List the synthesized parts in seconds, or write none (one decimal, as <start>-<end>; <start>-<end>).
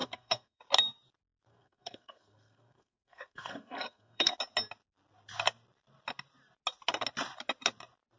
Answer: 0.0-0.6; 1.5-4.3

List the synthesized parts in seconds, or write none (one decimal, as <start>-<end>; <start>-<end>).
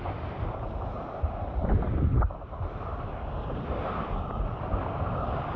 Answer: none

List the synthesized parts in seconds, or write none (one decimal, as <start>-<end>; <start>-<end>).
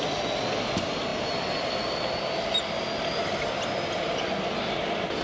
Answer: none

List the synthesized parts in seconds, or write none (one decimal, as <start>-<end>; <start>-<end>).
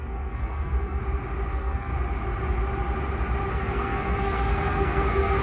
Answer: 0.0-1.0; 1.5-1.9; 3.5-5.4